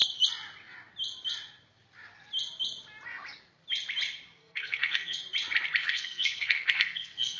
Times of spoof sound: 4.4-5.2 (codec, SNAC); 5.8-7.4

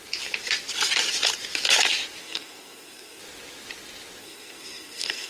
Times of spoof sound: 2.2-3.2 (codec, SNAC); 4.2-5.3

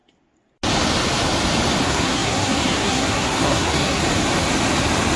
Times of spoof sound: 1.8-4.0 (codec, SNAC)